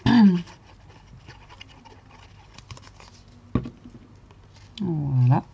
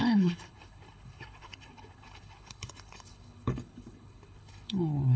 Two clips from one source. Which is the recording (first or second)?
first